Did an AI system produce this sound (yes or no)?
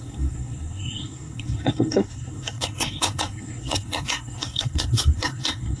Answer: yes